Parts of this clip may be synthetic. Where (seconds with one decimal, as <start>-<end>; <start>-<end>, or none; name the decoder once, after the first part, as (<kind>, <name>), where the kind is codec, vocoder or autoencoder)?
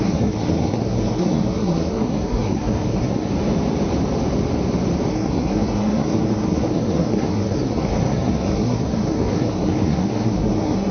0.0-3.3 (codec, SNAC); 5.1-10.9